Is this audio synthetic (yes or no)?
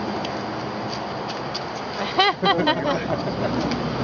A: no